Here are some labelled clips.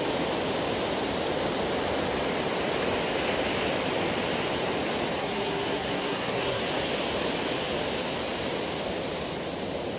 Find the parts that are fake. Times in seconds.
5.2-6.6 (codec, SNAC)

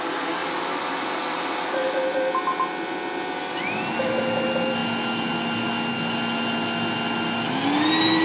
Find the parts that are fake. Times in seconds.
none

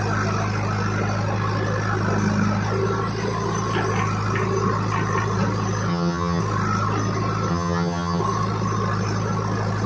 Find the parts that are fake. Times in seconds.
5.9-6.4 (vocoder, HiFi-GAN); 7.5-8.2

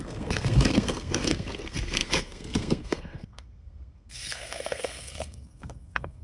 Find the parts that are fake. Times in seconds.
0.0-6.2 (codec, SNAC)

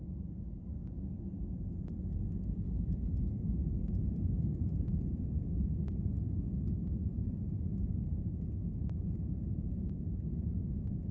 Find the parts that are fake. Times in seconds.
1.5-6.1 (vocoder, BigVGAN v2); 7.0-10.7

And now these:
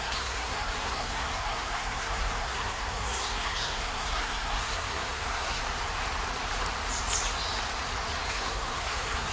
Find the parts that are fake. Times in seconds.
0.0-5.6 (codec, SNAC); 8.3-9.3

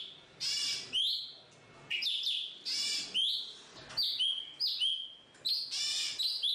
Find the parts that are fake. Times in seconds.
none

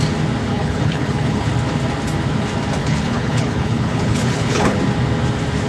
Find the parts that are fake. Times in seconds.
0.5-1.5 (codec, HILCodec); 2.8-4.8